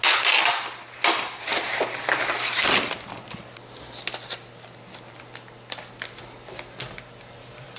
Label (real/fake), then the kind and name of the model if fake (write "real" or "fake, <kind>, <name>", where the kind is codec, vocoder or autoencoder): real